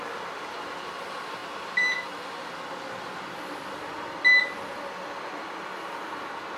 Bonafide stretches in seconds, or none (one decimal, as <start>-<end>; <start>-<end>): 0.0-1.4; 2.0-6.6